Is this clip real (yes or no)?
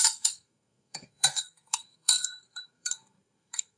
no